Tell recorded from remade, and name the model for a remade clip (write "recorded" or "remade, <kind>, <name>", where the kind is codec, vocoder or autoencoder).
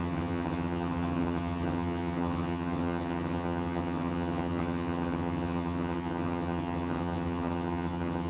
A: remade, vocoder, HiFi-GAN